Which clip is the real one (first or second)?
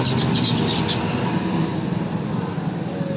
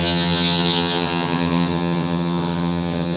first